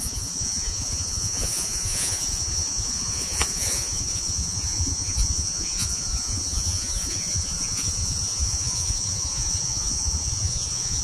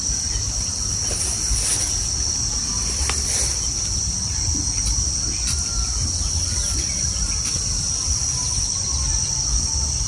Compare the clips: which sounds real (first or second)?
second